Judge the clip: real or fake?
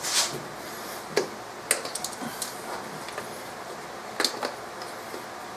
real